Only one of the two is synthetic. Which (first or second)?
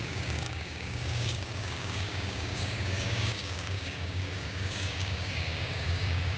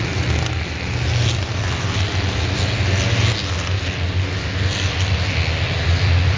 first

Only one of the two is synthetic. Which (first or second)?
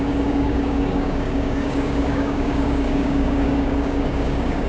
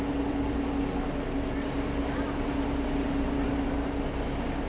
first